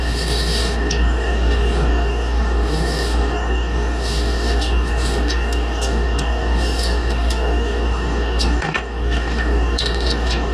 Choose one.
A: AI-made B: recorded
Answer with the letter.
A